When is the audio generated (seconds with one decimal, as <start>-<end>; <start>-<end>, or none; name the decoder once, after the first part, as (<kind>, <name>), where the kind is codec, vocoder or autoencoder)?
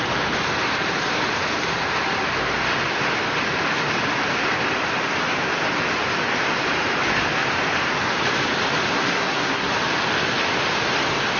8.9-9.7 (codec, SNAC)